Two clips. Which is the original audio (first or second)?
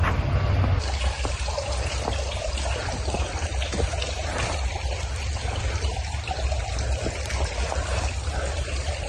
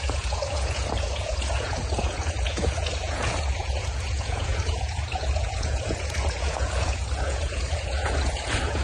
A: first